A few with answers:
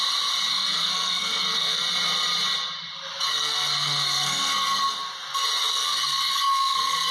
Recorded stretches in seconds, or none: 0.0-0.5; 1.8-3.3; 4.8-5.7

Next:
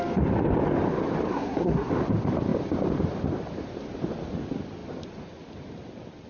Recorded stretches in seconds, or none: 0.0-1.3; 1.9-6.3

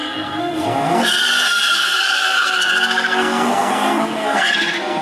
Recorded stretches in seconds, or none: none

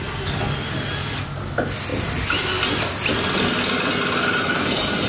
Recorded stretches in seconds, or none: 0.0-5.1

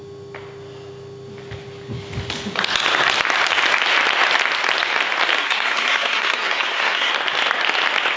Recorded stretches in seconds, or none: 0.0-5.4; 7.1-8.2

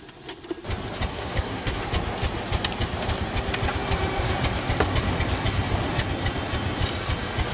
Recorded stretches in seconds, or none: 0.0-1.1; 1.8-7.5

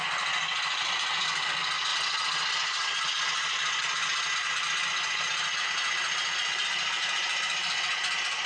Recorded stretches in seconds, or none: 0.0-8.5

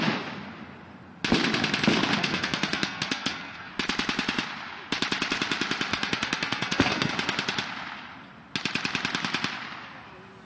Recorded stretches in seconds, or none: 0.0-2.2; 3.7-5.9; 7.1-10.4